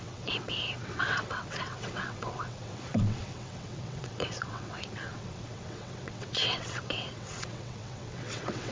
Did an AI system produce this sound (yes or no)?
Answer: yes